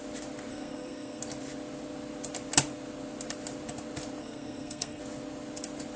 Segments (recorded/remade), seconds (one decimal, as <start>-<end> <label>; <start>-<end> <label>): 0.0-0.5 recorded; 0.5-1.2 remade; 1.2-4.2 recorded; 4.2-5.0 remade; 5.0-6.0 recorded